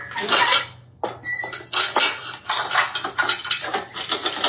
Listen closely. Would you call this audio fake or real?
real